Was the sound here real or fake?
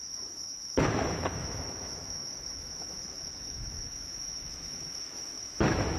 fake